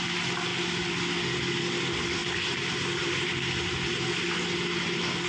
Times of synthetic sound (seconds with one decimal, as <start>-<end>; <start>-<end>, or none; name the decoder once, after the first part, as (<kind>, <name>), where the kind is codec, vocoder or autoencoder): 2.2-3.1 (vocoder, BigVGAN v2)